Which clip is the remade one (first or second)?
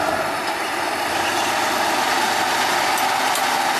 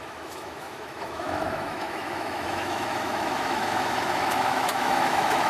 second